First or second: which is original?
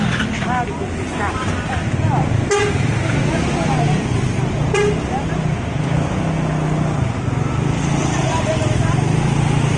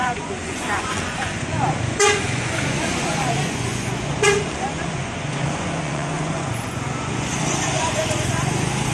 first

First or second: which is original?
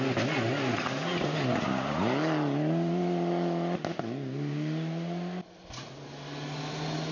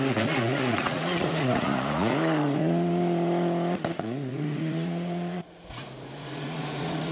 first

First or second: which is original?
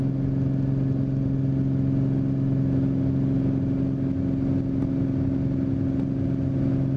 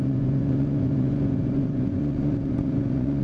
first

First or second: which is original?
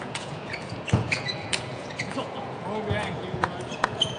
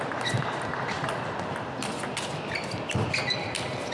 second